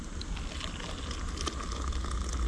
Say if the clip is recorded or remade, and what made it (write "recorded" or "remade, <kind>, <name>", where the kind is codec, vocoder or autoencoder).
recorded